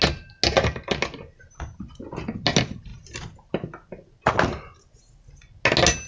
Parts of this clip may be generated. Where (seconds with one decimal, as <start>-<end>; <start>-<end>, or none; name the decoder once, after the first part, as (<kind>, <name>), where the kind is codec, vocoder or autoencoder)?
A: none